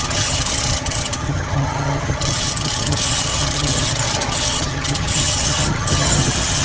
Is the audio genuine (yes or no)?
no